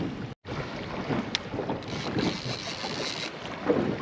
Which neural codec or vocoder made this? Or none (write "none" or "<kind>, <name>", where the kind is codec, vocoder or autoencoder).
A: none